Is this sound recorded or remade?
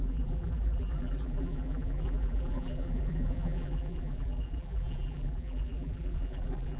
remade